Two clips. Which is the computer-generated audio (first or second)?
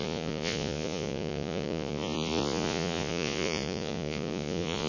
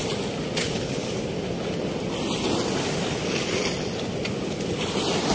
first